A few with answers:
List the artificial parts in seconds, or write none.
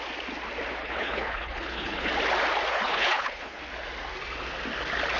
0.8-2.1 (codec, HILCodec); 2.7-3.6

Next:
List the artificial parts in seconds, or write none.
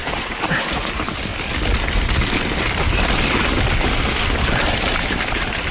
0.0-1.3 (vocoder, BigVGAN v2); 4.5-5.7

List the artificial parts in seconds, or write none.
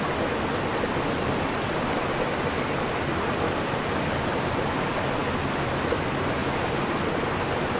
none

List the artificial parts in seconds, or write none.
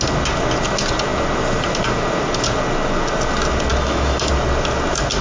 3.7-4.3 (autoencoder, DAC-VAE)